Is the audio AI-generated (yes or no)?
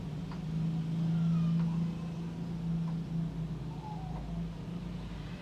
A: no